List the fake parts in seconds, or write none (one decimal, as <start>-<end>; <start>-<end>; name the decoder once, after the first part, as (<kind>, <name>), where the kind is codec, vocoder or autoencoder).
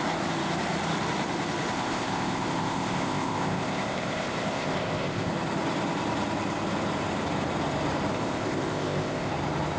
1.7-5.3 (codec, ZipCodec); 8.1-9.3